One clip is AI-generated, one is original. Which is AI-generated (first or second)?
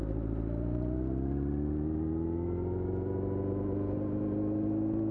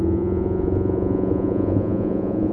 second